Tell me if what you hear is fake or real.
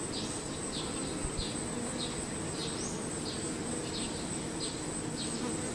real